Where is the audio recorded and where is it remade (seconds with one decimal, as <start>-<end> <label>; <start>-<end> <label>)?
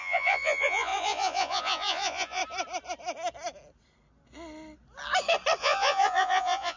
0.0-2.4 remade; 2.4-5.6 recorded; 5.6-6.8 remade